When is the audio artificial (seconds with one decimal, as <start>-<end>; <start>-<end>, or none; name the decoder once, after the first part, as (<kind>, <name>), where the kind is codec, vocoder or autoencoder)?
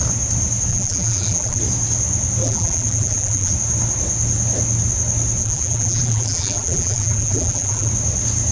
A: 0.7-1.6 (vocoder, BigVGAN v2); 2.4-3.5; 5.4-7.9